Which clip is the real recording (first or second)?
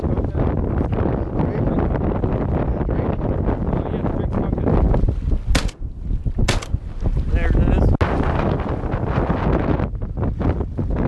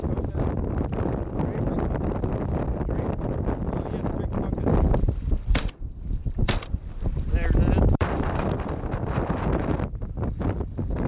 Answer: first